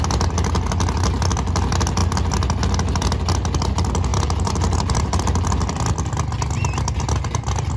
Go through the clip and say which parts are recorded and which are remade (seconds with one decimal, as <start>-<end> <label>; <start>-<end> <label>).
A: 0.0-4.1 recorded; 4.1-5.2 remade; 5.2-7.8 recorded